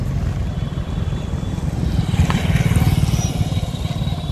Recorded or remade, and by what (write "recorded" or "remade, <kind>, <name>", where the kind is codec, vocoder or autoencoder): recorded